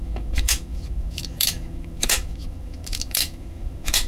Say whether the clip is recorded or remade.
remade